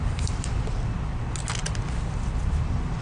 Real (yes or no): yes